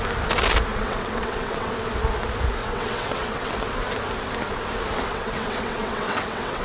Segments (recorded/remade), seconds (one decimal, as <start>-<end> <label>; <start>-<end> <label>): 0.0-0.7 recorded; 0.7-1.7 remade; 1.7-2.6 recorded; 2.6-3.5 remade; 3.5-5.1 recorded; 5.1-6.6 remade